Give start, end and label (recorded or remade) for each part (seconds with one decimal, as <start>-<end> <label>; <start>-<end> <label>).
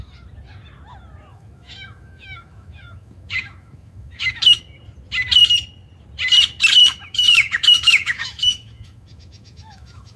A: 0.0-1.3 recorded; 1.3-4.6 remade; 4.6-6.8 recorded; 6.8-10.2 remade